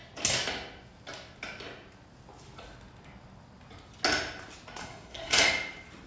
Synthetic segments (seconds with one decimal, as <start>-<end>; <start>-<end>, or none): 4.8-5.4